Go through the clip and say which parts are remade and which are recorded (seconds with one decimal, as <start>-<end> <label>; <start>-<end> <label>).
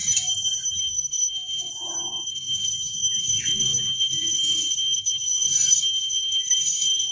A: 0.0-0.8 recorded; 0.8-1.7 remade; 1.7-2.3 recorded; 2.3-2.7 remade; 2.7-3.2 recorded; 3.2-7.1 remade